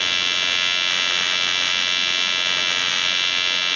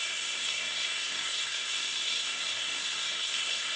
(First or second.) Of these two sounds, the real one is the first